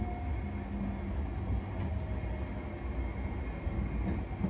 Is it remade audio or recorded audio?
recorded